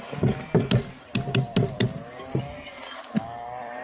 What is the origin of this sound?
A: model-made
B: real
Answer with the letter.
B